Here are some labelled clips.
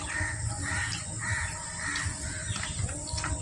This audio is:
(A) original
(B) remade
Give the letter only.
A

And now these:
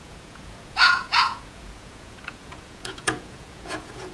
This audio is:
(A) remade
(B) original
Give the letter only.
A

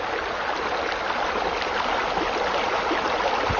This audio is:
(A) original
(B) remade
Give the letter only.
A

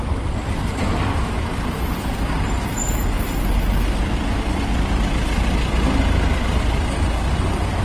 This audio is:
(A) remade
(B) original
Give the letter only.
B